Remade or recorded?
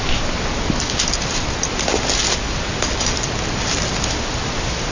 recorded